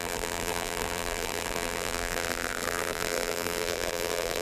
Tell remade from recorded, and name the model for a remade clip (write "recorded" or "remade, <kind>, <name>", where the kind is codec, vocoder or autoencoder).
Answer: remade, vocoder, BigVGAN v2